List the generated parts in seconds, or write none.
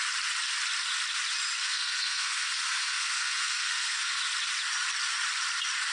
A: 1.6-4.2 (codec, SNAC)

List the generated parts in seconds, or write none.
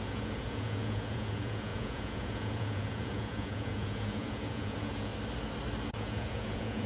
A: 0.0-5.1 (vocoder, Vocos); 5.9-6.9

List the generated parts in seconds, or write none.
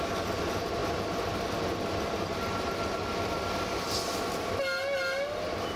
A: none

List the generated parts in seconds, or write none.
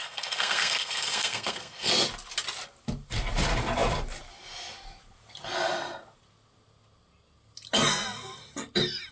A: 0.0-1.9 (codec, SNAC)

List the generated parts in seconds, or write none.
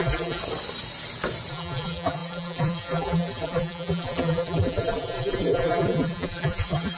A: 0.0-0.4 (vocoder, BigVGAN v2); 1.5-7.0